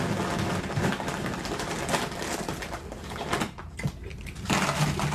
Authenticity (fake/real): real